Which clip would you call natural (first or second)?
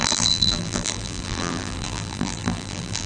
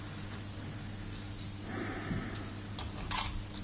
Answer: second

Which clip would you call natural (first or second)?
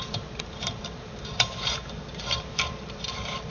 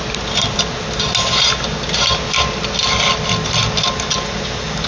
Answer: second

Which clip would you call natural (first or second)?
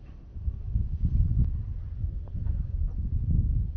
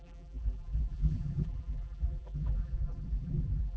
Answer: first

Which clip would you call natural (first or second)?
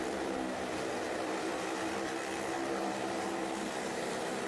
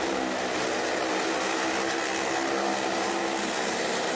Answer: second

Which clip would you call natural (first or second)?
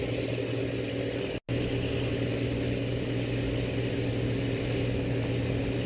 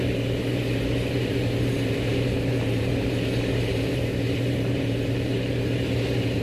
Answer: first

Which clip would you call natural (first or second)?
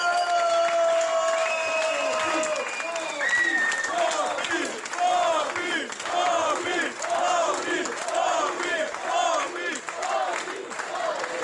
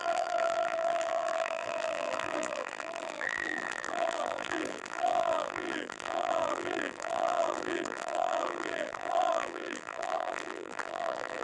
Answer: first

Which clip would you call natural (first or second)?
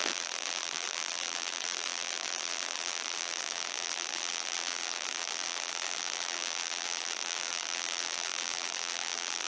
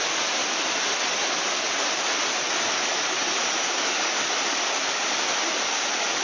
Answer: second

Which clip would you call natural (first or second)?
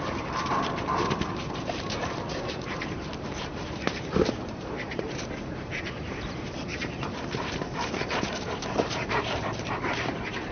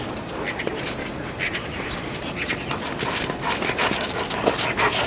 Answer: second